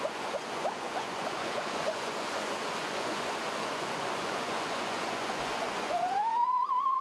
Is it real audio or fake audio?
fake